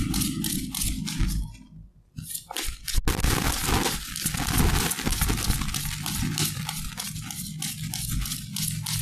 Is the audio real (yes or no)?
yes